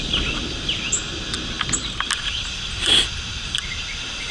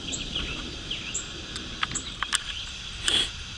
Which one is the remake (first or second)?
second